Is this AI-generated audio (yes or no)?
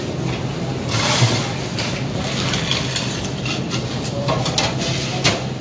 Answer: no